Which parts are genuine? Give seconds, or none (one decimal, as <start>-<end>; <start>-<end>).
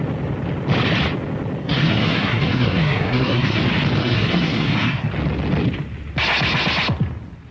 0.0-1.6; 3.6-4.0; 5.1-7.5